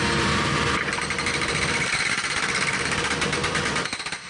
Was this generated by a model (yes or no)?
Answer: yes